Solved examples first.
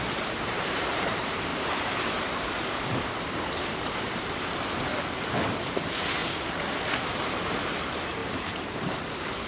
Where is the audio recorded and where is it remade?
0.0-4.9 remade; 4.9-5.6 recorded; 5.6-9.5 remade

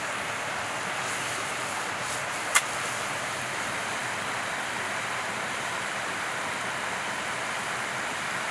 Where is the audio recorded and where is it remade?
0.0-4.0 recorded; 4.0-6.5 remade; 6.5-8.5 recorded

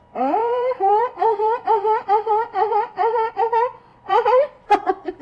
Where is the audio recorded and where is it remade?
0.0-0.4 recorded; 0.4-3.3 remade; 3.3-3.9 recorded; 3.9-5.2 remade